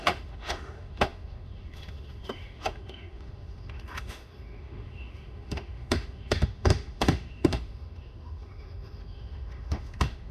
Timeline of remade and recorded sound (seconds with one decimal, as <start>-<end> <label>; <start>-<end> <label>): 0.0-10.3 remade